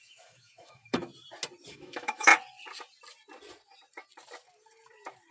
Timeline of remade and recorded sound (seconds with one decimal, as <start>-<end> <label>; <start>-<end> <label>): 0.0-1.1 remade; 1.1-1.7 recorded; 1.7-2.3 remade; 2.3-5.3 recorded